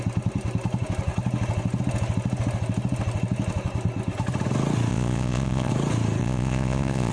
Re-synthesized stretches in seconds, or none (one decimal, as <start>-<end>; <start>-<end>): 4.9-5.7; 6.2-7.1